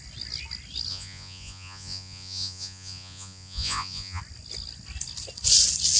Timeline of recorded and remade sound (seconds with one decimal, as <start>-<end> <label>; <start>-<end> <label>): 0.0-0.9 recorded; 0.9-4.2 remade; 4.2-6.0 recorded